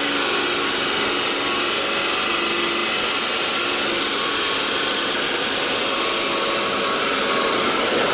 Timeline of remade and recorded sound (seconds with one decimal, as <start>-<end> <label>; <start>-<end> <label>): 0.0-8.1 recorded